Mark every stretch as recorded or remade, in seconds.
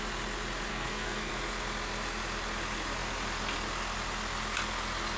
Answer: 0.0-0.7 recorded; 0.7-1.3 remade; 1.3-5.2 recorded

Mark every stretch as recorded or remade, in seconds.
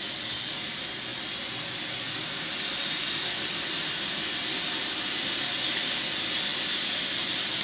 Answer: 0.0-7.6 recorded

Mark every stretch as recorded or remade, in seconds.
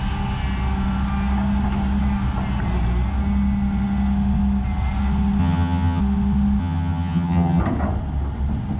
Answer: 0.0-5.4 recorded; 5.4-6.0 remade; 6.0-6.6 recorded; 6.6-7.6 remade; 7.6-8.8 recorded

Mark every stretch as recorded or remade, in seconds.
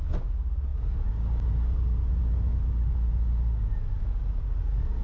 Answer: 0.0-5.0 recorded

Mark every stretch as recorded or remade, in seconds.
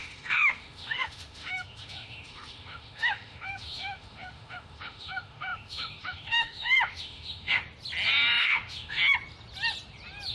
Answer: 0.0-7.6 remade; 7.6-8.4 recorded; 8.4-9.0 remade; 9.0-10.3 recorded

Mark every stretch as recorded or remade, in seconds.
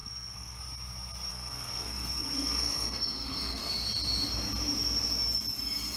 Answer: 0.0-0.6 remade; 0.6-1.3 recorded; 1.3-3.6 remade; 3.6-6.0 recorded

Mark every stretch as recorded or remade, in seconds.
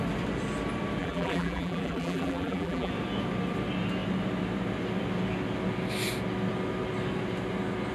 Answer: 0.0-1.0 recorded; 1.0-2.9 remade; 2.9-7.9 recorded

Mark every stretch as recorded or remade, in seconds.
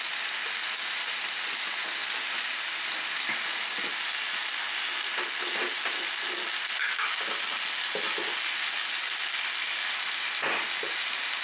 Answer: 0.0-11.4 recorded